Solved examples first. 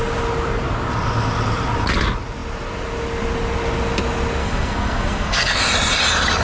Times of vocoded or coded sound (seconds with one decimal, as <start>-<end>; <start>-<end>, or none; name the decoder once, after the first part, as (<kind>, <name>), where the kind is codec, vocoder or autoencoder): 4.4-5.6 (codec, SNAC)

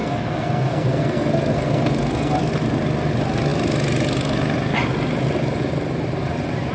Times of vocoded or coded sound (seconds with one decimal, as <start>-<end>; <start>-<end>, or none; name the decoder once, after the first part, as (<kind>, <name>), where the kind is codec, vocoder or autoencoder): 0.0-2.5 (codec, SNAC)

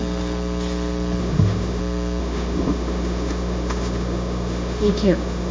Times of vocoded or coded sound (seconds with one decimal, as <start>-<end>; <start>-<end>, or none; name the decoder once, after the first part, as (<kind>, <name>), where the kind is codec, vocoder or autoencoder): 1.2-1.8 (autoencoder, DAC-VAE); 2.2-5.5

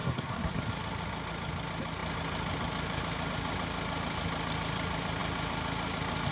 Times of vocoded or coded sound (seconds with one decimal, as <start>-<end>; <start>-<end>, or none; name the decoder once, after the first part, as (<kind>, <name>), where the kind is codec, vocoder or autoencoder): 0.0-0.6 (codec, SNAC)

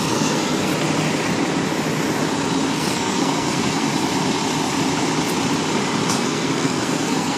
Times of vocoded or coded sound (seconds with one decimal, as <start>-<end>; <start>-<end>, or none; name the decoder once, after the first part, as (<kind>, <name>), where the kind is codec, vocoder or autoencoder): 0.0-0.7 (codec, SNAC); 2.7-3.9; 6.1-7.4

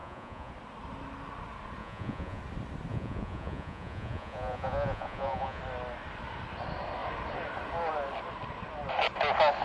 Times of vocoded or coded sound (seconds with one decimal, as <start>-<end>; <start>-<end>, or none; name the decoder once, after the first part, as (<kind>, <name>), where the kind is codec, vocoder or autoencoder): 0.0-0.5 (vocoder, Vocos); 1.8-2.4; 2.9-5.6

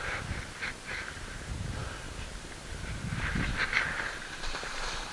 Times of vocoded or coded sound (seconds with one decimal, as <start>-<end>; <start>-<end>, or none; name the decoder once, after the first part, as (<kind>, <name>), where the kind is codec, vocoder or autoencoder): 0.0-5.1 (vocoder, BigVGAN v2)

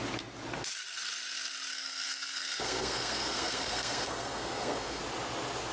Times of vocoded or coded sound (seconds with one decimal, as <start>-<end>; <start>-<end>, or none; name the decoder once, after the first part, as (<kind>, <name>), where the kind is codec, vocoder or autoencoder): 1.7-5.0 (codec, SNAC)